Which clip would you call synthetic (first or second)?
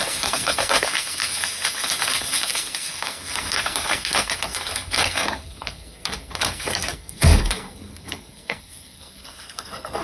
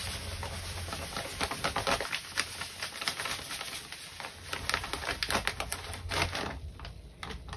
first